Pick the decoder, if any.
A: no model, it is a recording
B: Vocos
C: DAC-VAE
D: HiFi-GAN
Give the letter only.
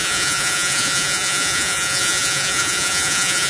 B